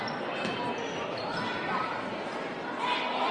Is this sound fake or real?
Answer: real